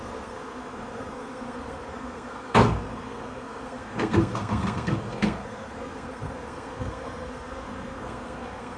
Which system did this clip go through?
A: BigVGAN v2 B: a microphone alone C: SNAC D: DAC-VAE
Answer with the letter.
C